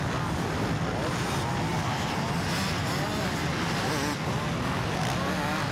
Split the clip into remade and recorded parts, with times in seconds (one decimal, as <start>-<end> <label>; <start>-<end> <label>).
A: 0.0-5.7 recorded